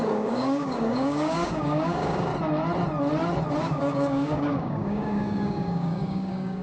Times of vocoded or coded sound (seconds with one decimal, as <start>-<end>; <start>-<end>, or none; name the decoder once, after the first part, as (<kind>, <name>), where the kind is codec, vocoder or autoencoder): 0.0-2.3 (codec, DAC); 3.6-6.6